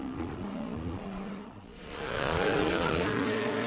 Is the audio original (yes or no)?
no